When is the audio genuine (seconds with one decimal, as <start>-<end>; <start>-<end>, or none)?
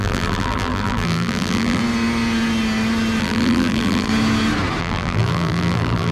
1.8-3.2; 4.1-4.8